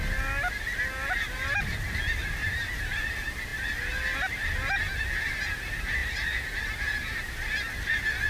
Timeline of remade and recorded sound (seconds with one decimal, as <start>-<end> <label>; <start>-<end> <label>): 0.0-2.4 recorded; 2.4-3.0 remade; 3.0-8.3 recorded